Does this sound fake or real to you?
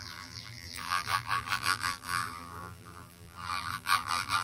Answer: fake